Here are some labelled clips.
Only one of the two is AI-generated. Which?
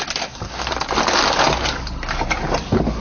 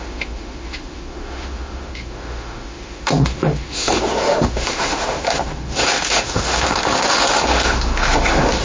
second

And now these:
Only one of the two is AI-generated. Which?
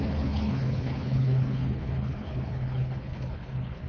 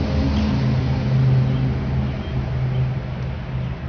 first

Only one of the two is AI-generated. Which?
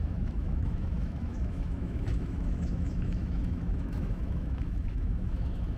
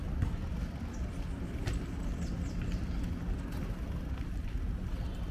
first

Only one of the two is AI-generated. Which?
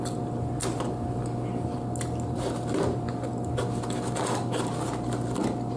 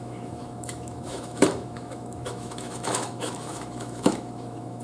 second